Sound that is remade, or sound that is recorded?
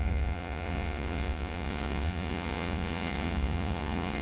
remade